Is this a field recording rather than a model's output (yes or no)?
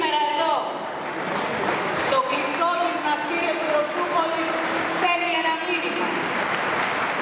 yes